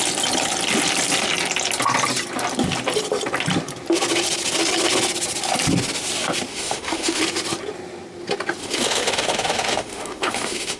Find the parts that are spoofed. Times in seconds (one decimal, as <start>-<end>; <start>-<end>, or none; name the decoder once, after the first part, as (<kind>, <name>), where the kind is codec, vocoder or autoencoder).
6.5-7.2 (autoencoder, DAC-VAE); 8.6-10.8